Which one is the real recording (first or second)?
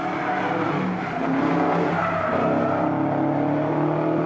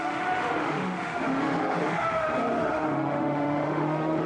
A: first